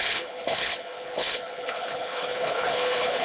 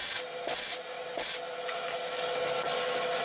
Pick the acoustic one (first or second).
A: second